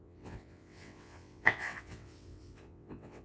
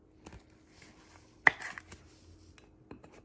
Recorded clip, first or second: second